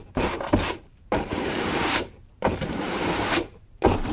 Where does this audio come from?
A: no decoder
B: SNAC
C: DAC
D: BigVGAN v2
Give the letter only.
D